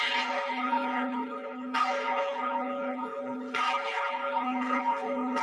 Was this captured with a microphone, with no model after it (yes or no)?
no